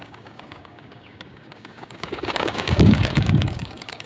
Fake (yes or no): yes